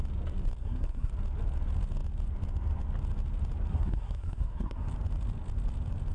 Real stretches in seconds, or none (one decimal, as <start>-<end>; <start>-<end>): 0.0-0.6; 1.1-3.7; 4.9-6.1

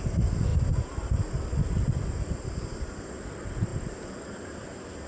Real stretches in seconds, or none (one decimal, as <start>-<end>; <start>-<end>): 0.0-5.1

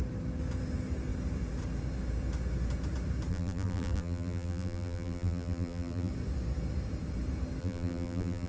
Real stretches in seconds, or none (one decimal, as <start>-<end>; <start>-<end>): 0.0-3.3; 6.1-7.6